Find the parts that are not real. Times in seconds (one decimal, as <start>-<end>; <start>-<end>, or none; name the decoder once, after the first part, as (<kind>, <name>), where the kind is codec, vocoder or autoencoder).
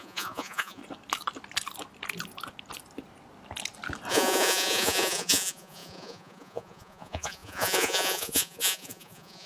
0.0-0.8 (vocoder, Vocos); 4.1-9.5